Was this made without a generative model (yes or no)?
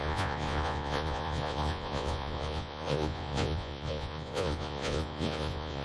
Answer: no